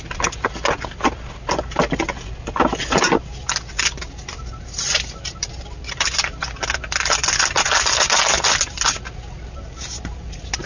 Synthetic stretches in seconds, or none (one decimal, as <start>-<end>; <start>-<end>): none